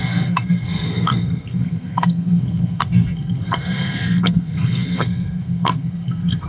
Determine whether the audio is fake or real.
fake